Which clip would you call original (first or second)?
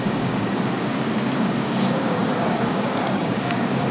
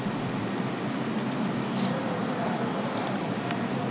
second